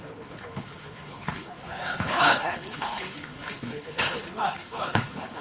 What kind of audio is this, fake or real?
fake